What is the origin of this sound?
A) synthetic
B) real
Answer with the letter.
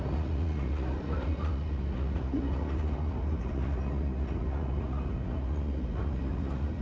A